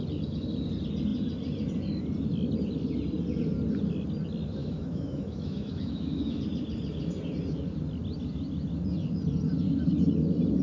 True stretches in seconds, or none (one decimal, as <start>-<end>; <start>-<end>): 0.0-4.6; 6.4-10.6